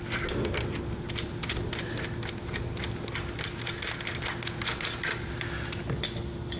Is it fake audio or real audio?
real